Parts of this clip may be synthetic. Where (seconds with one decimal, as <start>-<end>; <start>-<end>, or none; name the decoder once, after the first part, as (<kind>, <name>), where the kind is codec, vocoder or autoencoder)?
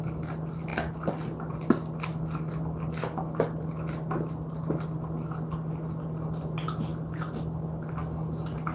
none